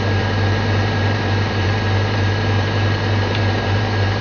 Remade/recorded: remade